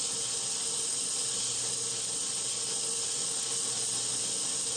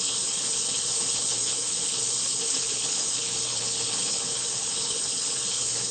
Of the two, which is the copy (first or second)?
second